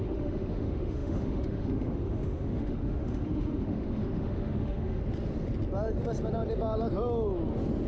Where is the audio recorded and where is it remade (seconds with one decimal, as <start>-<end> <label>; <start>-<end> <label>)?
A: 0.0-5.0 remade; 5.0-7.9 recorded